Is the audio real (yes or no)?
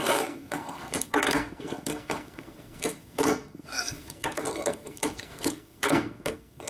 no